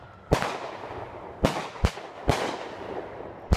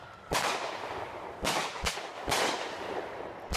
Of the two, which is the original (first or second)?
first